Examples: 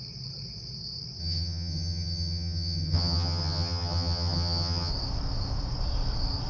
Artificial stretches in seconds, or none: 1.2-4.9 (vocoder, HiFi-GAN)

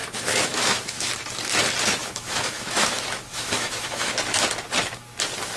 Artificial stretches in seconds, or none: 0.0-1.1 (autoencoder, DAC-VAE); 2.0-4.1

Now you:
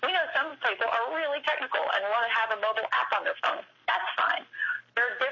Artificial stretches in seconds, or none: none

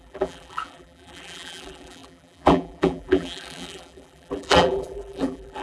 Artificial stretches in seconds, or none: 0.0-5.6 (vocoder, BigVGAN v2)

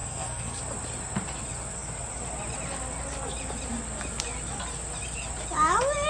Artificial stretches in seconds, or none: 0.0-0.6 (codec, SNAC)